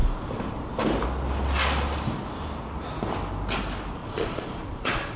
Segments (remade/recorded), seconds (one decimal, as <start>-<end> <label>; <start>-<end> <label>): 0.0-4.0 recorded; 4.0-5.2 remade